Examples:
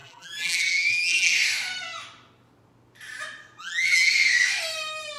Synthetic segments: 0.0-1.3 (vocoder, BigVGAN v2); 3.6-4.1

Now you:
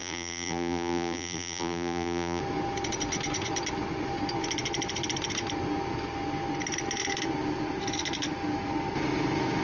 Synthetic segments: 0.0-2.4 (vocoder, BigVGAN v2)

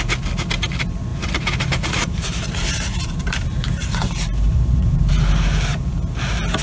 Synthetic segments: 1.1-5.1 (vocoder, BigVGAN v2)

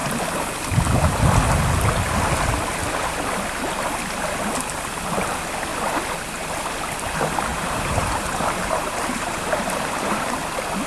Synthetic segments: 7.5-10.4 (vocoder, BigVGAN v2)